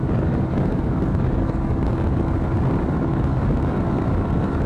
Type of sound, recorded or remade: remade